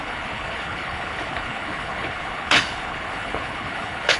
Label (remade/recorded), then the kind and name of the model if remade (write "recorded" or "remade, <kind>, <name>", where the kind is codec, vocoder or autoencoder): remade, codec, HILCodec